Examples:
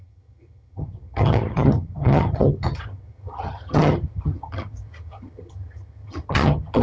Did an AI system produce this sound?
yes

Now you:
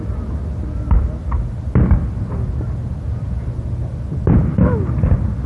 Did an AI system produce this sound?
no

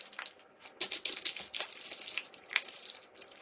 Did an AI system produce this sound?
no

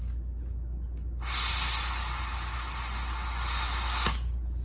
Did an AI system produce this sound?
no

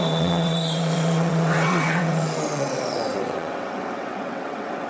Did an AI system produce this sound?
yes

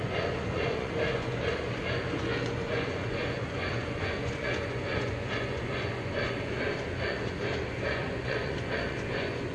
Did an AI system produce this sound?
yes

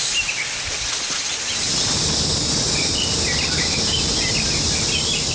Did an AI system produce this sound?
no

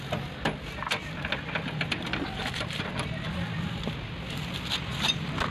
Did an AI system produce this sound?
no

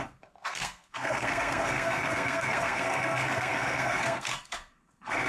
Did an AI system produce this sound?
yes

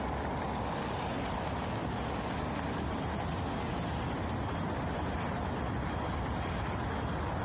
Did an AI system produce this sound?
no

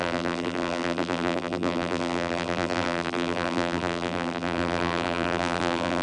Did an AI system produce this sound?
yes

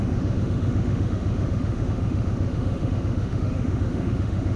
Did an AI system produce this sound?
yes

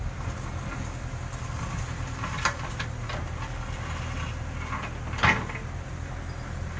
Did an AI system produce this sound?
no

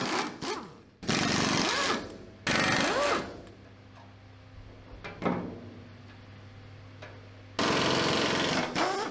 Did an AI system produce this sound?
no